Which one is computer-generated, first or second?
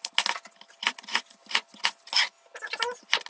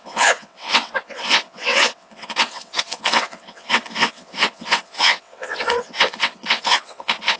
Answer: second